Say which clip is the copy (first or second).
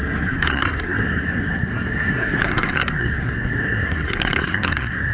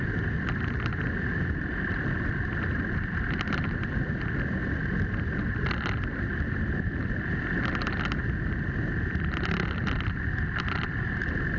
first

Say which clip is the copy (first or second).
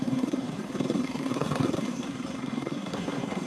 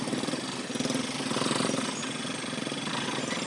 first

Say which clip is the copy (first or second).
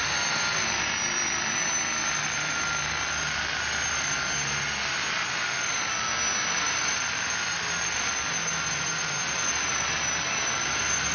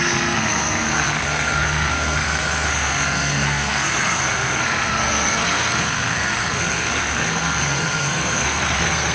second